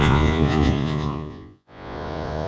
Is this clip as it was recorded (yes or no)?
no